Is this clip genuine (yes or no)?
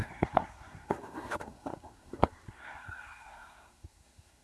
no